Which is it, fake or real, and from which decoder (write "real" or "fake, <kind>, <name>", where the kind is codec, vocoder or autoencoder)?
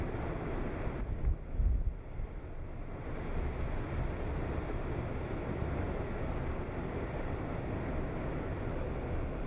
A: real